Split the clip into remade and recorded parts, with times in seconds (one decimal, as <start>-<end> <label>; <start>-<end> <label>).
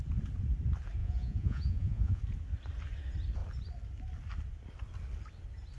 0.0-1.0 recorded; 1.0-2.2 remade; 2.2-5.8 recorded